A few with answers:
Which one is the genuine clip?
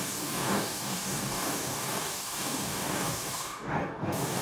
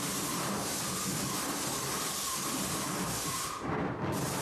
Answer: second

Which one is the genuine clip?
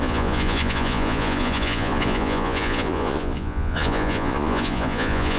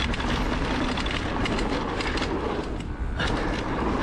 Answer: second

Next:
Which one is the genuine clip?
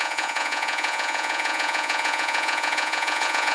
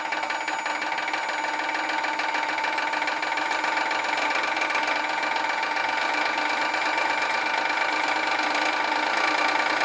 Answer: second